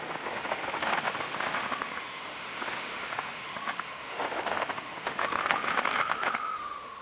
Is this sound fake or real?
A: fake